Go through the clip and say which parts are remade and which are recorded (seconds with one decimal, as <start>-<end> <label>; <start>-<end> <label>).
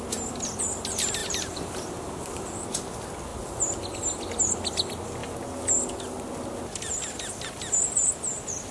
0.0-1.2 recorded; 1.2-2.5 remade; 2.5-8.7 recorded